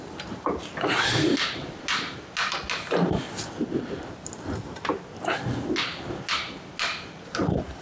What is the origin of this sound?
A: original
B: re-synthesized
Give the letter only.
A